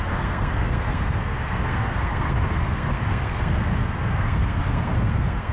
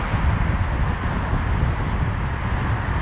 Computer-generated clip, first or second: first